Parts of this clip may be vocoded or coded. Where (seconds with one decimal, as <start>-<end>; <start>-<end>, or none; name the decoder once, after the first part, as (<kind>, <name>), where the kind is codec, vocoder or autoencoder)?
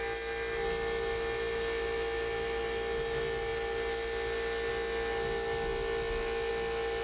none